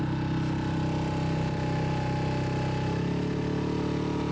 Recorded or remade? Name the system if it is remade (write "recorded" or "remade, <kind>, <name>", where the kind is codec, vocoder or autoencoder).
recorded